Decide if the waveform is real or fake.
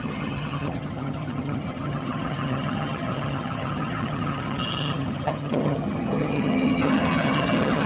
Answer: fake